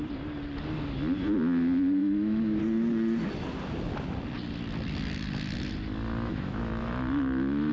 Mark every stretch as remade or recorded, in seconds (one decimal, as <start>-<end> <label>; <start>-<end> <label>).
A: 0.0-2.0 recorded; 2.0-2.6 remade; 2.6-6.3 recorded; 6.3-7.7 remade